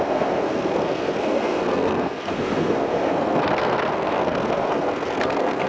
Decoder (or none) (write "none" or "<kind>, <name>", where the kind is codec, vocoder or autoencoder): codec, SNAC